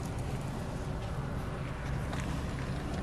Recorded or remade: recorded